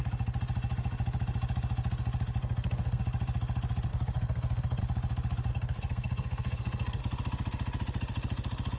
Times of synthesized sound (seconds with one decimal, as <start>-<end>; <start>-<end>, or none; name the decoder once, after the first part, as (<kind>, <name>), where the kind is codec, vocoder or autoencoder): 2.4-3.0 (codec, SNAC); 3.9-4.8; 5.5-7.0